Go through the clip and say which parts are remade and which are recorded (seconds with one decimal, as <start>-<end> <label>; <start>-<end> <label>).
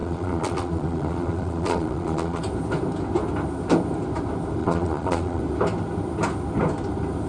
0.0-2.4 remade; 2.4-4.6 recorded; 4.6-5.4 remade; 5.4-7.3 recorded